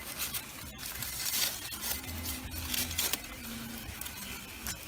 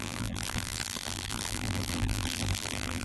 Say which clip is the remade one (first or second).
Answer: second